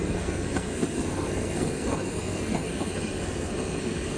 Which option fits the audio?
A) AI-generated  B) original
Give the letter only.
A